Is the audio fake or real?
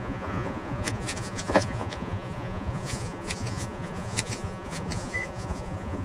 fake